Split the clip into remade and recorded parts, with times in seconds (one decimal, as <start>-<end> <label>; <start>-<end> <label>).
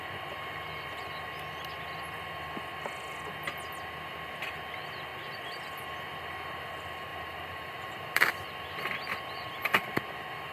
0.0-5.1 recorded; 5.1-5.9 remade; 5.9-7.1 recorded; 7.1-10.0 remade; 10.0-10.5 recorded